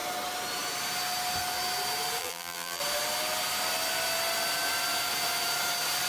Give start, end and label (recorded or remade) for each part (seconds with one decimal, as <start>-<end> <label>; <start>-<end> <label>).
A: 0.0-2.2 recorded; 2.2-2.8 remade; 2.8-6.1 recorded